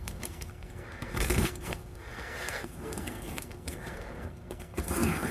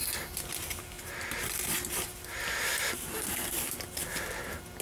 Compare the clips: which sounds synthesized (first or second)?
first